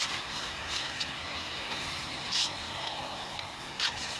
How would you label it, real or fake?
fake